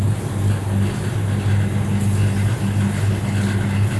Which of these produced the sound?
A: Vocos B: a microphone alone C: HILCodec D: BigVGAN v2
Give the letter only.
B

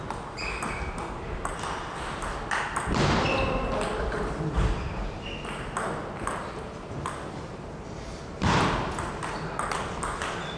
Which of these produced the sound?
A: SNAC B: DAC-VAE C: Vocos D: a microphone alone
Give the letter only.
D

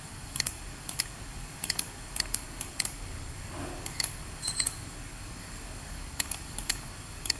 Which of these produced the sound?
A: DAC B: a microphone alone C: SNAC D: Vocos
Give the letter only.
A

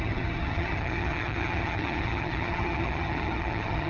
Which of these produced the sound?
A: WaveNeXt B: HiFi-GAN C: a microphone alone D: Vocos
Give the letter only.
B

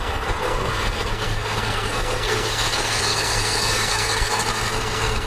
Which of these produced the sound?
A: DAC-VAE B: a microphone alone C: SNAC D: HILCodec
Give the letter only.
C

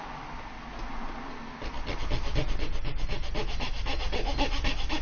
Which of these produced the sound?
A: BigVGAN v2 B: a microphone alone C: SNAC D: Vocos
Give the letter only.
B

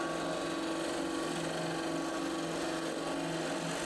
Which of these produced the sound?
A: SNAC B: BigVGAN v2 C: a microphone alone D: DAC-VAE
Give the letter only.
C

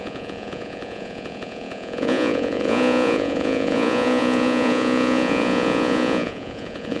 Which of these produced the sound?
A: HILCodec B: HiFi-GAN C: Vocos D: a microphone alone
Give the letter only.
C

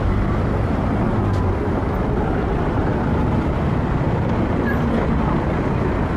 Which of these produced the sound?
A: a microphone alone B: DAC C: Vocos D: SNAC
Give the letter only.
A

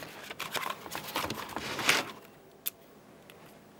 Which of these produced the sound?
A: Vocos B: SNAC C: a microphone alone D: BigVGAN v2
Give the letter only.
C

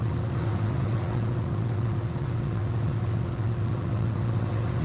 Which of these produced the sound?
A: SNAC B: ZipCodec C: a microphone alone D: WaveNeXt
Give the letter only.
D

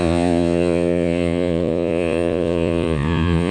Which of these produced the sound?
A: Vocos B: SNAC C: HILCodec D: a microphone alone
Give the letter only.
A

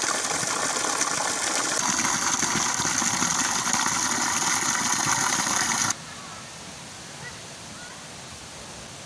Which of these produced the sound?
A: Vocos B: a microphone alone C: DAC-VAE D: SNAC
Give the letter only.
B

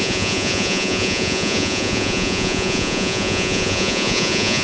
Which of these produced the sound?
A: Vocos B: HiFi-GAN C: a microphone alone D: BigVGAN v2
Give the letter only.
A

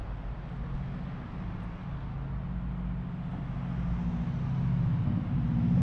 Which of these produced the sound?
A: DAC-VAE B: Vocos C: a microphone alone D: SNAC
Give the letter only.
C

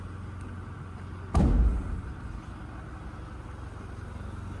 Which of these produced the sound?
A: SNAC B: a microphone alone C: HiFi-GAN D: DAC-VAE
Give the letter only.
B